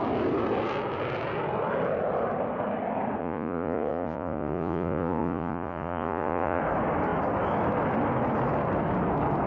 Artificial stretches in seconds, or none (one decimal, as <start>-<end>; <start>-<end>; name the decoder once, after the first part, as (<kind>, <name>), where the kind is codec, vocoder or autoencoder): 3.2-6.6 (vocoder, Vocos)